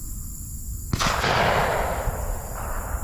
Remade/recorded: recorded